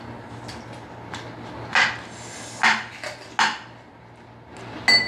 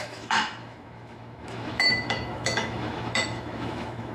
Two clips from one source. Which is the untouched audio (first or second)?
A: first